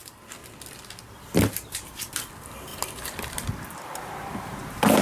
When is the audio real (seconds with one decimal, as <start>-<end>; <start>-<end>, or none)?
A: 0.0-5.0